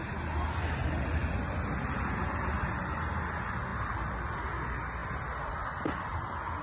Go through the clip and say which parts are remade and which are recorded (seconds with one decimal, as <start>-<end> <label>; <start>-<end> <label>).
0.0-6.6 recorded